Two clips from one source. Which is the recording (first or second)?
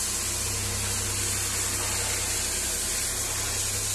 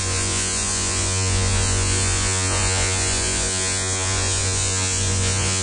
first